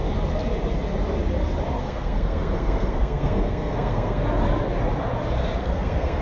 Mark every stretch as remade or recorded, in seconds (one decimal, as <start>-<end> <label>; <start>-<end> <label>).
0.0-1.8 recorded; 1.8-4.2 remade; 4.2-5.6 recorded; 5.6-6.2 remade